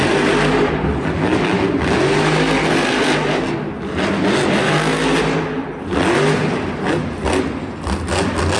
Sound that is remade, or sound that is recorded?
recorded